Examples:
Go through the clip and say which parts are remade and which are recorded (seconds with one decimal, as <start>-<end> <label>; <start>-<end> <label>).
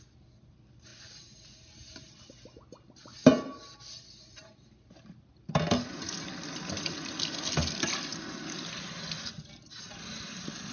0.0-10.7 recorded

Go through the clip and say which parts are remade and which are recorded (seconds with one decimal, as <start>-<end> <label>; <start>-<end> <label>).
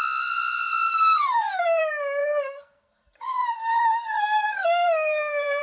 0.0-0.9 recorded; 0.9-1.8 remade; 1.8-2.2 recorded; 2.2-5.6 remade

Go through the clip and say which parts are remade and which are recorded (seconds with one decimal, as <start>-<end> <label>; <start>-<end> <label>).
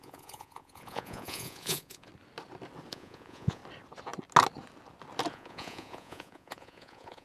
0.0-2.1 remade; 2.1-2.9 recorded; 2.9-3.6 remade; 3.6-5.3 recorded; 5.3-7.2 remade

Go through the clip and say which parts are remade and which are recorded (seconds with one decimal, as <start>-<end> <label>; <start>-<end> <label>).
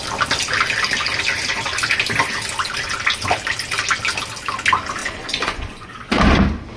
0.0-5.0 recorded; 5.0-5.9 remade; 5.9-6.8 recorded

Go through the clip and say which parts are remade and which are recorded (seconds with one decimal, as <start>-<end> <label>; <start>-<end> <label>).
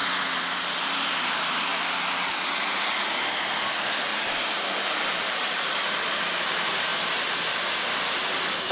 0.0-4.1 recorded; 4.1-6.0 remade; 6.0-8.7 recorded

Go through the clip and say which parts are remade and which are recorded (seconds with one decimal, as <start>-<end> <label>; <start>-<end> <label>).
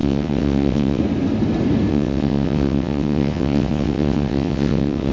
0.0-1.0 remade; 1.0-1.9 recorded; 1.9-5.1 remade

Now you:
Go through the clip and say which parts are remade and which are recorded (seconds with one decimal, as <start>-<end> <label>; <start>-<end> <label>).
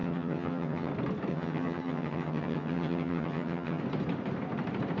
0.0-0.9 remade; 0.9-1.3 recorded; 1.3-3.8 remade; 3.8-5.0 recorded